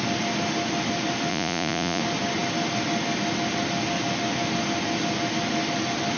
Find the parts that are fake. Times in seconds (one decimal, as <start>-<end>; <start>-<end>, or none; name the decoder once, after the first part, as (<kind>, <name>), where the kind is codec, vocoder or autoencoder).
1.3-2.0 (vocoder, Vocos)